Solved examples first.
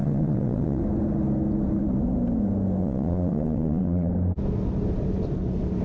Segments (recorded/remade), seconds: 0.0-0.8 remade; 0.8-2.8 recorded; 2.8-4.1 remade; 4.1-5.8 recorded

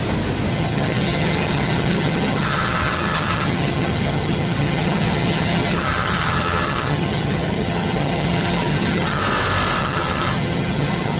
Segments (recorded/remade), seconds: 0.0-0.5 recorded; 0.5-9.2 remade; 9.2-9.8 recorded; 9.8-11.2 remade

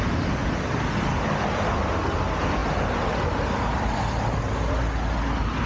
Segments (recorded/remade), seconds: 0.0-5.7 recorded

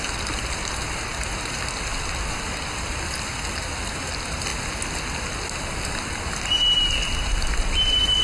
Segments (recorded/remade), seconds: 0.0-8.2 recorded

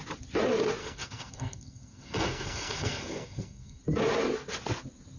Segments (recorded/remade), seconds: 0.0-0.8 recorded; 0.8-3.8 remade; 3.8-5.2 recorded

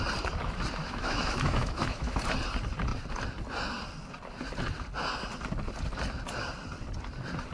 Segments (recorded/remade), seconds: 0.0-0.8 recorded; 0.8-2.2 remade; 2.2-7.5 recorded

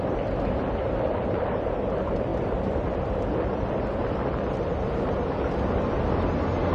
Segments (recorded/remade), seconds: 0.0-6.7 recorded